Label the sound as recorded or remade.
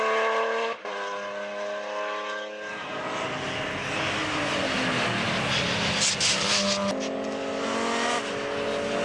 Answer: recorded